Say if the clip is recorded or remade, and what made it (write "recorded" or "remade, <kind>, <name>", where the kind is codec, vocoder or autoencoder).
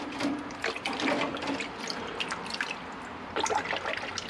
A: recorded